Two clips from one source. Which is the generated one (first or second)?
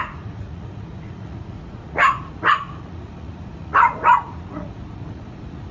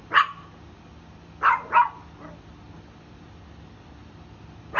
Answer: first